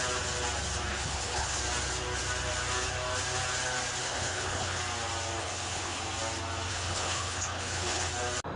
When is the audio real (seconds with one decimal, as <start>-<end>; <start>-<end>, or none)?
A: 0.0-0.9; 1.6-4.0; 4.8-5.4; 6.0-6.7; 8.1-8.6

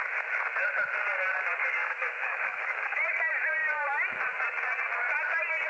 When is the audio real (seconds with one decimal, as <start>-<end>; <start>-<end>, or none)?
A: 0.0-1.8; 3.0-5.7

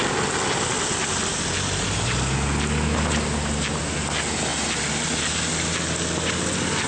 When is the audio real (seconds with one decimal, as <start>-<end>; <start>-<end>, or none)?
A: 0.0-6.9